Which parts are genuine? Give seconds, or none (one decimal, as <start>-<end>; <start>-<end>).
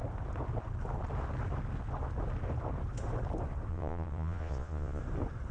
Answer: 0.0-3.7; 5.0-5.5